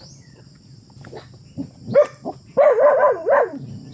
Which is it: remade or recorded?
recorded